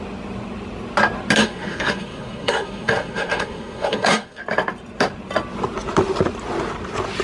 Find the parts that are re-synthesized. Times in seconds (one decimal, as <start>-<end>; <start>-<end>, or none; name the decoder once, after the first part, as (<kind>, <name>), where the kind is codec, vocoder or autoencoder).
1.4-4.4 (codec, SNAC)